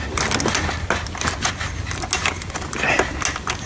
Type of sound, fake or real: real